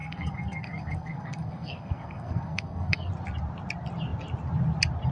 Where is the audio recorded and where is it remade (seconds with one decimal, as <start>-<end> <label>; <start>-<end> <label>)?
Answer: 0.0-3.1 remade; 3.1-5.1 recorded